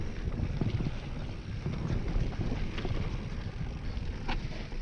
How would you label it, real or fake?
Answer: real